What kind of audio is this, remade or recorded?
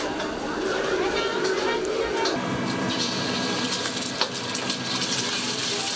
recorded